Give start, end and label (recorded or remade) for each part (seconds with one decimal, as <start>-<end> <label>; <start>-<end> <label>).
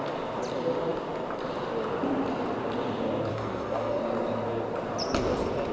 0.0-3.3 recorded; 3.3-4.0 remade; 4.0-5.7 recorded